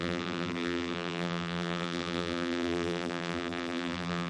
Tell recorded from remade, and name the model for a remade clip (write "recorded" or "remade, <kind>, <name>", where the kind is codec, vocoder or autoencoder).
remade, vocoder, BigVGAN v2